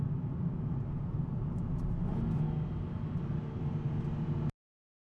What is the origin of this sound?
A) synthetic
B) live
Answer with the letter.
B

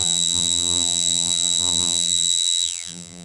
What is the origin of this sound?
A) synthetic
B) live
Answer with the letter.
A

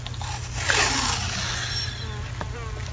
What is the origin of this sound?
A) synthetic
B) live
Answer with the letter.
B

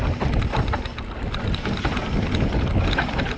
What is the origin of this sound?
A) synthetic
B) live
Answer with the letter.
B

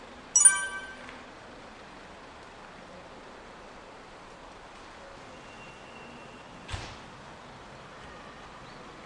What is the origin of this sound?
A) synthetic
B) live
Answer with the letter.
B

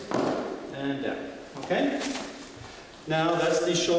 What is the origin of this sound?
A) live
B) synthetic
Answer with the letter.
A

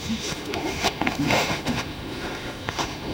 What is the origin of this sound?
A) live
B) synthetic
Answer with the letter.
B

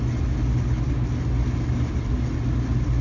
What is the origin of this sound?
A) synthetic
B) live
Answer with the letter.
B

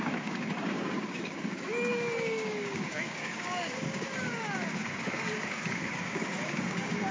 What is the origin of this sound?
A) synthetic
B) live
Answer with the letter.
A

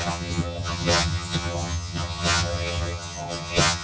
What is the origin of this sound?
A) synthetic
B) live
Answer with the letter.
A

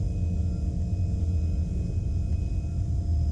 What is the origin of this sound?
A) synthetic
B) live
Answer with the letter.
B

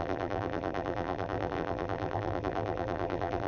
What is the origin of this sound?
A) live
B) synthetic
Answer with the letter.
B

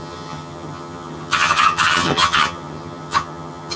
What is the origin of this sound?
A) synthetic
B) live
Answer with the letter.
A